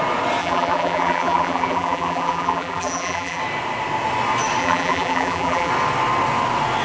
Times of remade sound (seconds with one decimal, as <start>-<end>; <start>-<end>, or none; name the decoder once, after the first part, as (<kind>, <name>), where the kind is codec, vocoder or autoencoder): 0.4-3.4 (vocoder, BigVGAN v2); 4.6-5.7